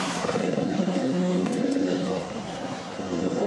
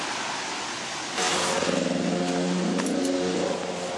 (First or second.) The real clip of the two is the second